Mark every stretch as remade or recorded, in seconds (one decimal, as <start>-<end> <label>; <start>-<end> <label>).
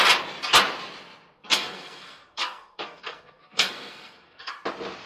0.0-1.4 recorded; 1.4-4.5 remade; 4.5-5.1 recorded